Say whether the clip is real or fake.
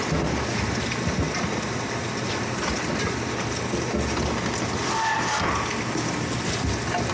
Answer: real